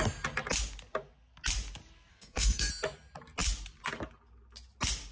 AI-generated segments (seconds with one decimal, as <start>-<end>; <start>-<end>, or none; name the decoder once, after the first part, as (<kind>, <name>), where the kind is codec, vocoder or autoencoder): 2.1-2.7 (codec, SNAC)